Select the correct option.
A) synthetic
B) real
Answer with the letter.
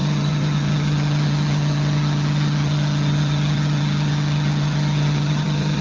A